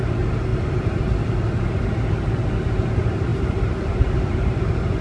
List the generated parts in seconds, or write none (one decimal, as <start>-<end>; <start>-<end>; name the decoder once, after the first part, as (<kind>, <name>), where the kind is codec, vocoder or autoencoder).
3.3-4.6 (vocoder, BigVGAN v2)